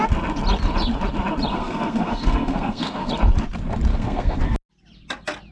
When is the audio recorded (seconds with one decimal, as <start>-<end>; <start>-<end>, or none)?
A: 0.0-1.5; 3.1-3.9; 4.4-5.5